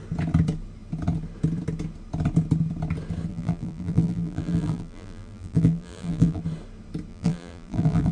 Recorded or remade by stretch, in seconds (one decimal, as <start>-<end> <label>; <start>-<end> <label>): 0.0-3.3 recorded; 3.3-6.4 remade; 6.4-7.1 recorded; 7.1-8.1 remade